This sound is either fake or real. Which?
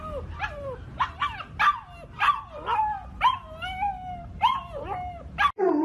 real